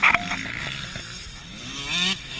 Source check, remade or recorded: recorded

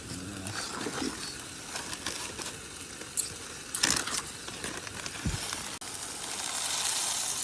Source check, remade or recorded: recorded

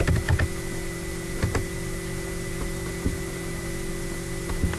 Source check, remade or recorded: recorded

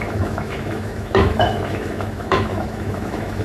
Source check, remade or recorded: remade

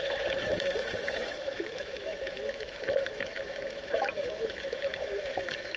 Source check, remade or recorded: remade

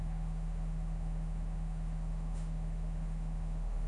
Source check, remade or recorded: remade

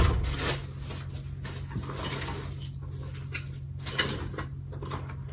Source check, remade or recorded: recorded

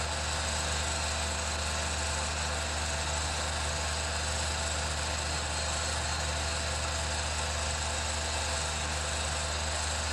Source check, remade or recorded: recorded